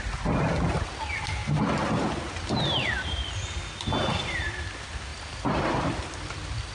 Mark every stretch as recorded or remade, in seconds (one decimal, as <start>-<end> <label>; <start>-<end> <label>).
0.0-5.1 recorded; 5.1-6.2 remade; 6.2-6.7 recorded

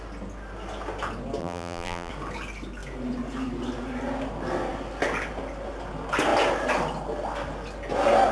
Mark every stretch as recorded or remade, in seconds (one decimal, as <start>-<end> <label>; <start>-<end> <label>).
0.0-1.4 recorded; 1.4-2.1 remade; 2.1-8.3 recorded

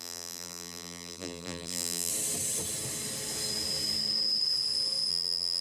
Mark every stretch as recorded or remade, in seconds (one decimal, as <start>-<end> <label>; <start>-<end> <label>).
0.0-2.1 remade; 2.1-5.1 recorded; 5.1-5.6 remade

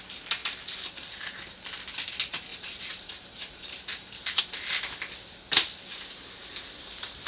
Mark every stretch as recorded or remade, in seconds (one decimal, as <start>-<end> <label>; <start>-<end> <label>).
0.0-0.4 recorded; 0.4-1.3 remade; 1.3-2.5 recorded; 2.5-4.4 remade; 4.4-7.3 recorded

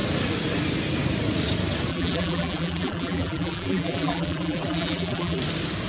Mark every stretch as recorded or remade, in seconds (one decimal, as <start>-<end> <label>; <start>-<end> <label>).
0.0-1.9 recorded; 1.9-5.4 remade; 5.4-5.9 recorded